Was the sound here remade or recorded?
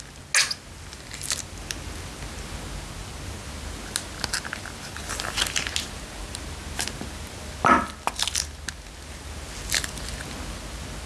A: recorded